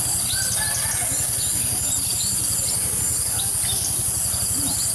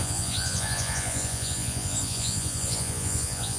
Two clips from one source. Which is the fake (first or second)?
second